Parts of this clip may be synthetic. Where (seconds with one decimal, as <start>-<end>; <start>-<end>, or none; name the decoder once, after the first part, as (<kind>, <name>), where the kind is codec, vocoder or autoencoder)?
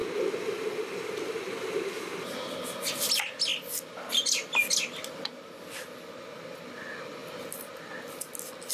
none